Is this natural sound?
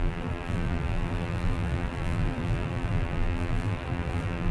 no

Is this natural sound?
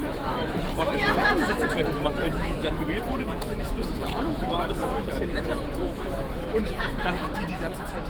no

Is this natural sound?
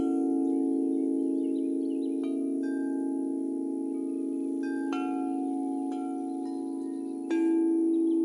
yes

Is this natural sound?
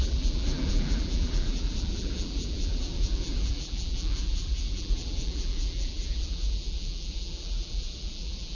no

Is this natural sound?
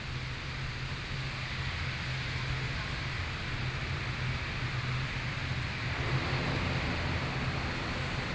yes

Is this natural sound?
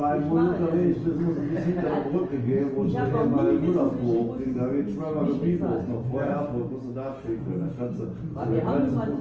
yes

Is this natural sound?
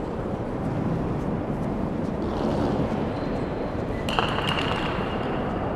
no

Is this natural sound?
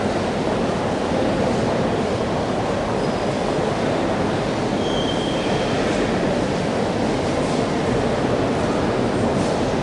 yes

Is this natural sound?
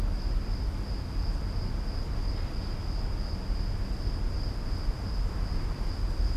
yes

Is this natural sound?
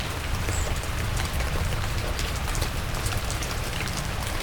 no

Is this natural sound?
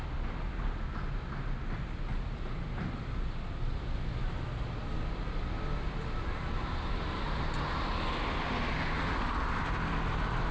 yes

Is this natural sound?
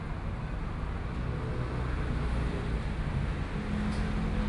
yes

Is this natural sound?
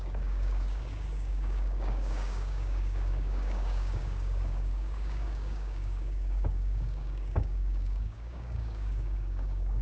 no